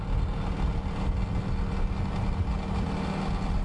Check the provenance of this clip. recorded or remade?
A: recorded